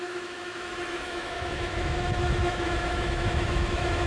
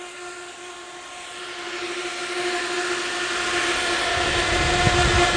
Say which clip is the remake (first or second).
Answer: first